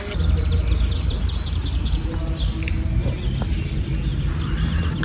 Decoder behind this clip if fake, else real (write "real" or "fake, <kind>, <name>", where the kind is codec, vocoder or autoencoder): real